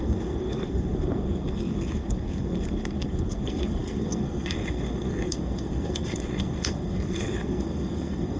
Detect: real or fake fake